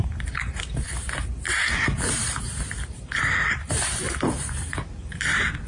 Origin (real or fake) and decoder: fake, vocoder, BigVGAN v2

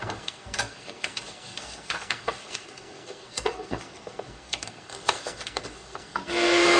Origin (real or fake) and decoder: fake, codec, SNAC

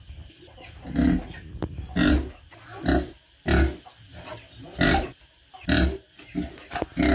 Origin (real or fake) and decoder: real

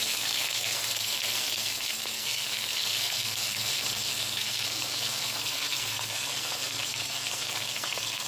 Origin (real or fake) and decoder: fake, codec, SNAC